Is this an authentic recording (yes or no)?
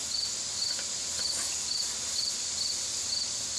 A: yes